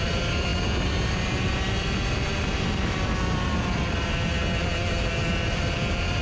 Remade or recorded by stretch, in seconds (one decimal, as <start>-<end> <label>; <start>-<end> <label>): 0.0-6.2 recorded